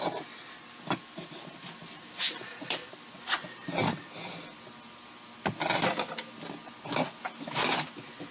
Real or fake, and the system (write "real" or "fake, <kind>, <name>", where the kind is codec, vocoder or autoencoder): real